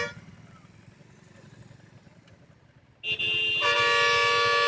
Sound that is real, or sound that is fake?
real